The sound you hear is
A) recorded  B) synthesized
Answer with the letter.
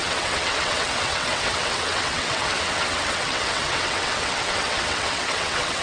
B